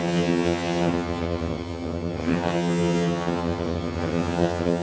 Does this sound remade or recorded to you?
remade